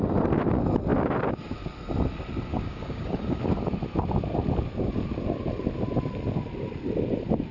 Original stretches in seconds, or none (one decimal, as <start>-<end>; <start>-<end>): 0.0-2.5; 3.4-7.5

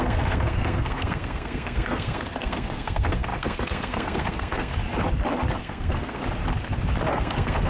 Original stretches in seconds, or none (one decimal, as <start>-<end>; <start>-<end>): 4.7-5.6; 6.2-7.1

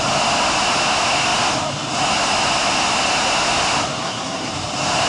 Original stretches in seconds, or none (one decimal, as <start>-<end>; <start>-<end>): 0.0-4.0; 4.5-5.1

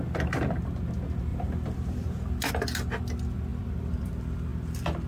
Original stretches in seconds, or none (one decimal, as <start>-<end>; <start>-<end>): 0.0-1.3; 2.5-3.5; 4.1-5.1

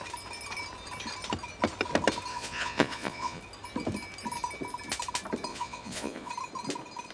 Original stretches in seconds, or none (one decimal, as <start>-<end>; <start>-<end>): 0.0-2.3; 3.4-5.5; 6.3-7.1

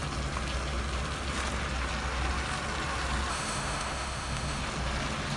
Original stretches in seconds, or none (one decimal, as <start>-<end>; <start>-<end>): 0.0-3.3; 4.6-5.4

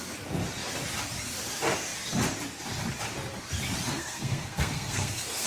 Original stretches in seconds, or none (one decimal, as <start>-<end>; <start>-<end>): 0.0-3.9

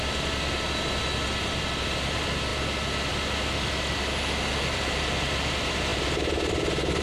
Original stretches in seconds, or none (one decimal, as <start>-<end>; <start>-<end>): 0.0-7.0